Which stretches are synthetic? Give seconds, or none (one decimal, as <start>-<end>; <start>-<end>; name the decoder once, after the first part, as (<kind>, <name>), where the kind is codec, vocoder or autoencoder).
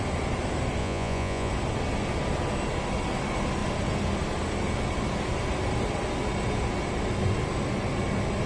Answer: 0.8-1.5 (vocoder, Vocos)